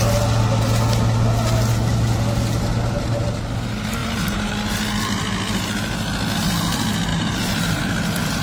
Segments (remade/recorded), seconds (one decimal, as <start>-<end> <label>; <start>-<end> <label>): 0.0-4.0 recorded; 4.0-4.5 remade; 4.5-7.1 recorded; 7.1-7.8 remade; 7.8-8.4 recorded